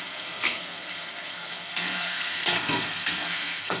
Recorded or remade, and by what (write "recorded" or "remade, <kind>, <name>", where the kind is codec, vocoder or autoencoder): remade, codec, SNAC